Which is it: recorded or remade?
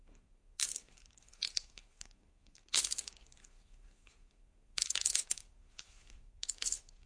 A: remade